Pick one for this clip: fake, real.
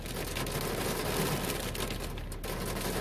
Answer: real